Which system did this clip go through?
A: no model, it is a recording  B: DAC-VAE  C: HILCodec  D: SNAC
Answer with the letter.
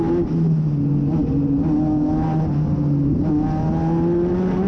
A